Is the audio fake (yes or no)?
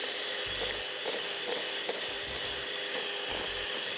no